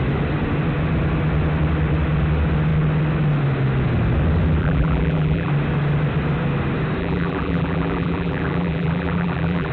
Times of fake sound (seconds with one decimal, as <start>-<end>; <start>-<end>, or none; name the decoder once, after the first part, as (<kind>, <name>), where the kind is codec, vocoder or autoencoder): 4.6-5.5 (vocoder, BigVGAN v2); 7.0-9.7